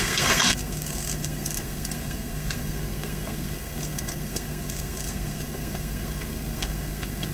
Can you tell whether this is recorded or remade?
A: remade